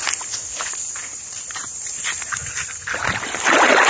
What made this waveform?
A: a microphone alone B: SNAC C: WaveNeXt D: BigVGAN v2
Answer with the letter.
A